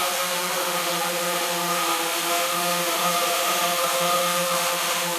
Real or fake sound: fake